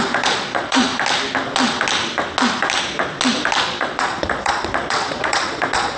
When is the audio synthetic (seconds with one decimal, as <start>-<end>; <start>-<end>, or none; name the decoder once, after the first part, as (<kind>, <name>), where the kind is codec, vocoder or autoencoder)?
0.0-0.9 (vocoder, Vocos); 3.6-6.0